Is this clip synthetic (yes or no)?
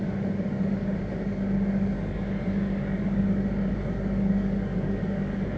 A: yes